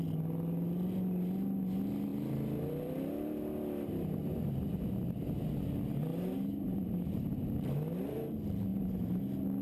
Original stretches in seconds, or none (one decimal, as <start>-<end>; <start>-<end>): 0.0-6.1; 7.5-8.7; 9.2-9.6